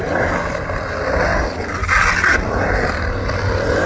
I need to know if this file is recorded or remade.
recorded